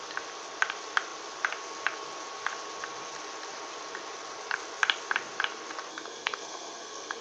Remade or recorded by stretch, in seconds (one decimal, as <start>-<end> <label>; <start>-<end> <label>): 0.0-5.9 recorded; 5.9-7.2 remade